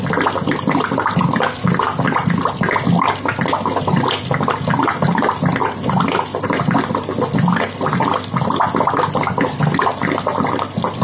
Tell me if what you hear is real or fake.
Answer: real